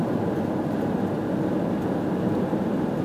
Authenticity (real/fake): real